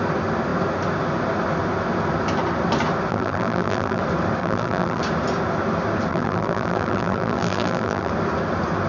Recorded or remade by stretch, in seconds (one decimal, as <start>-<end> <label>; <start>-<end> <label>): 0.0-3.1 recorded; 3.1-4.0 remade; 4.0-4.4 recorded; 4.4-5.0 remade; 5.0-6.1 recorded; 6.1-8.1 remade; 8.1-8.9 recorded